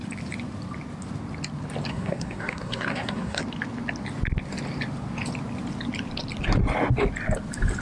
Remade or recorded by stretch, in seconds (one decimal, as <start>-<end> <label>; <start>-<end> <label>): 0.0-1.9 recorded; 1.9-3.4 remade; 3.4-7.8 recorded